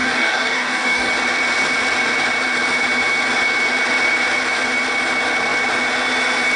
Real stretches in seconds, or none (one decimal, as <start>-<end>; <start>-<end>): 1.1-6.6